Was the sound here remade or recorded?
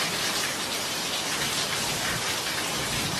recorded